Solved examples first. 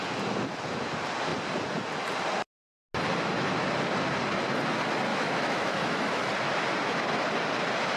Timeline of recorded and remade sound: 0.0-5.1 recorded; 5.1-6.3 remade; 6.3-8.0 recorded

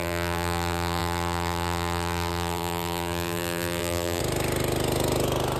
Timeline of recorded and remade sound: 0.0-4.2 remade; 4.2-5.6 recorded